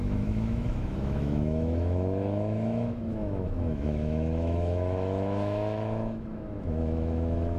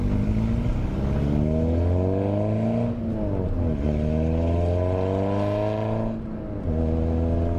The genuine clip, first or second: second